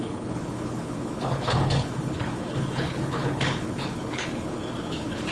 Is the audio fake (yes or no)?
yes